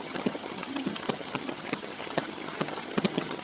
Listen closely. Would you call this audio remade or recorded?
remade